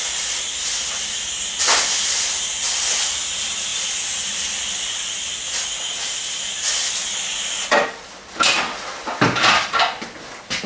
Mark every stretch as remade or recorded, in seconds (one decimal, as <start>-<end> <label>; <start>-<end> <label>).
0.0-10.7 recorded